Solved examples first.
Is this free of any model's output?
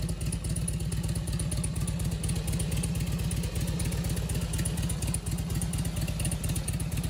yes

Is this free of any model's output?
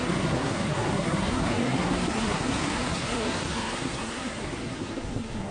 no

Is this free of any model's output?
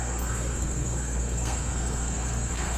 no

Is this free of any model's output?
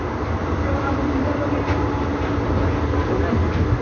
yes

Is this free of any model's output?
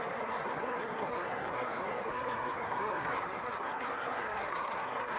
no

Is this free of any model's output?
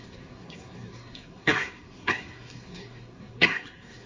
no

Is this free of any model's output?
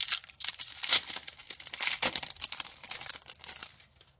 yes